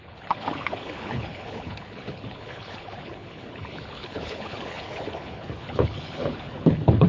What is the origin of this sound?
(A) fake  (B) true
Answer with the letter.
A